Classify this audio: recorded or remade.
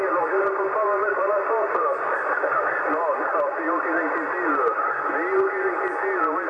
recorded